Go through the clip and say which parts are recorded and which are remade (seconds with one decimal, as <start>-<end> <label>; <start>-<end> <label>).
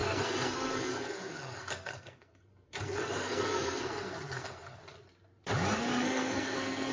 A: 0.0-4.8 remade; 4.8-5.8 recorded; 5.8-6.9 remade